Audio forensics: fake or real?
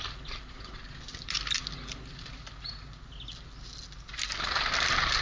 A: real